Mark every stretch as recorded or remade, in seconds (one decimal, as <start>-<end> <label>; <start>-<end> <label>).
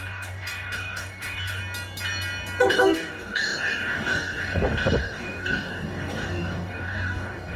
0.0-1.6 remade; 1.6-2.7 recorded; 2.7-7.6 remade